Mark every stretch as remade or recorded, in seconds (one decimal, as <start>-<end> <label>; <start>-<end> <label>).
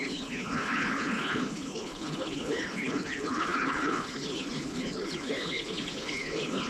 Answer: 0.0-6.7 remade